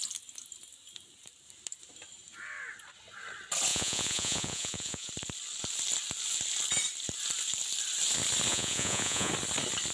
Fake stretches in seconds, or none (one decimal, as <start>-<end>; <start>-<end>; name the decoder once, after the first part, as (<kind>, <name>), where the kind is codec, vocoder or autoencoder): 3.7-5.1 (vocoder, Vocos); 8.5-9.3